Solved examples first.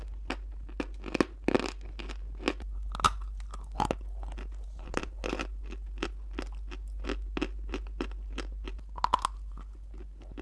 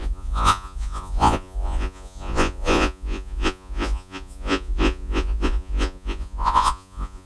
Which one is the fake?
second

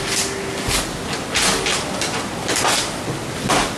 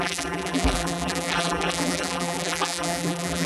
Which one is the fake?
second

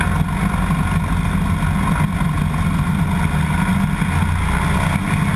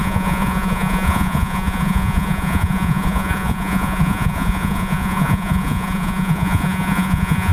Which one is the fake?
second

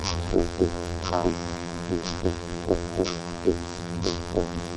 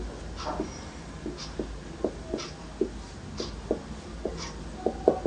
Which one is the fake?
first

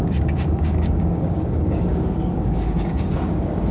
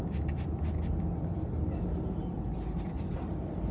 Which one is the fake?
first